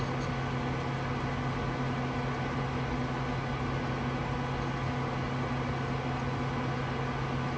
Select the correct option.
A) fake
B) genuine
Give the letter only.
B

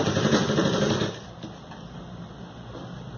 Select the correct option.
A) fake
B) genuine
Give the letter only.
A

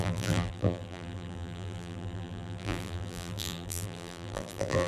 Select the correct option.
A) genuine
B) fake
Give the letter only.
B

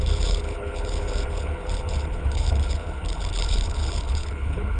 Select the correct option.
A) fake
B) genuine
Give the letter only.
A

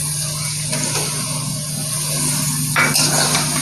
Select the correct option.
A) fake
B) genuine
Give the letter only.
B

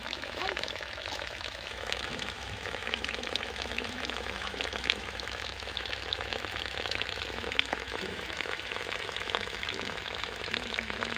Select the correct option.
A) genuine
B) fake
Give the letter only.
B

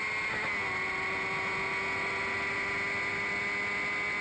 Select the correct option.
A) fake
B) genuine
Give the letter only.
B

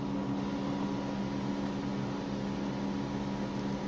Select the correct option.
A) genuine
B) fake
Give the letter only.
A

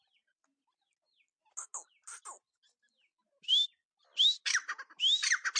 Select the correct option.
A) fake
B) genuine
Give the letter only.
B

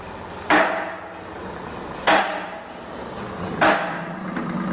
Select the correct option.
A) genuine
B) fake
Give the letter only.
A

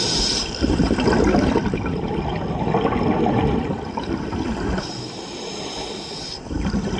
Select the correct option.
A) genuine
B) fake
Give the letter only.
B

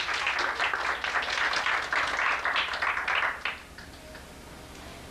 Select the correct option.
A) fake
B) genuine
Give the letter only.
B